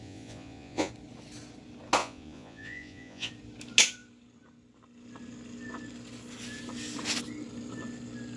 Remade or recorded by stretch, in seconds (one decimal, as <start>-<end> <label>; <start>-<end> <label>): 0.0-0.9 remade; 0.9-2.0 recorded; 2.0-3.3 remade; 3.3-8.4 recorded